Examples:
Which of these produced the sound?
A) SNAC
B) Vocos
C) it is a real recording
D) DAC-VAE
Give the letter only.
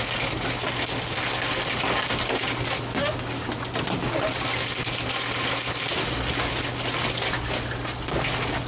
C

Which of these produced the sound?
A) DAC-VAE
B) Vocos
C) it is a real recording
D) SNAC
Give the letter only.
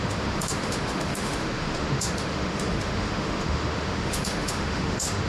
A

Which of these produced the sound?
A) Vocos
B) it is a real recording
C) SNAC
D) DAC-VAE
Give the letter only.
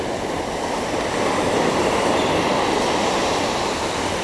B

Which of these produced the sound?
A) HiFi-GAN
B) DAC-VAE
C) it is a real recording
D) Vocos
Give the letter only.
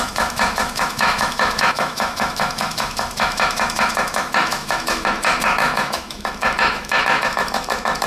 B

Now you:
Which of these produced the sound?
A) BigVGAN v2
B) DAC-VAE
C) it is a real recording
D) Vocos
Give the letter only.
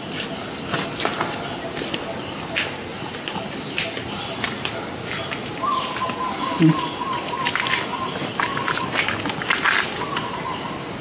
C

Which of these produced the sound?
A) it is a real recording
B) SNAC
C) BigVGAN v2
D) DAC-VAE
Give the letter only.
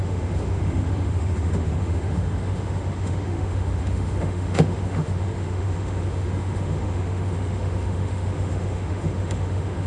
D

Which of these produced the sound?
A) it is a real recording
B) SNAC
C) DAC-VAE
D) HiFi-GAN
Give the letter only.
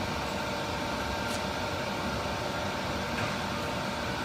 A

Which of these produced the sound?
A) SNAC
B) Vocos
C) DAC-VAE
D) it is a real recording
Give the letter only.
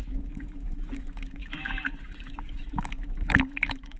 C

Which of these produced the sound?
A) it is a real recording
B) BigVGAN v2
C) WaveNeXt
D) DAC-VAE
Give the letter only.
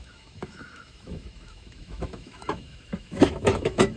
D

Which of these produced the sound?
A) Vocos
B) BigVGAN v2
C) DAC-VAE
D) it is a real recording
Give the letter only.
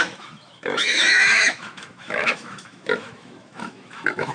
C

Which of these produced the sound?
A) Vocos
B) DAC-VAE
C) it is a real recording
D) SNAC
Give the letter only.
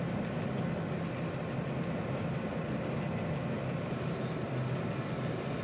C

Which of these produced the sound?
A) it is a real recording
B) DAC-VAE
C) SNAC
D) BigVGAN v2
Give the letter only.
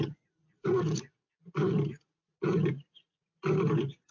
A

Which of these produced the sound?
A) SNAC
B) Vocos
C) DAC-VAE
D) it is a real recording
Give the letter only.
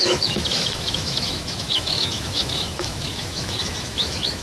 C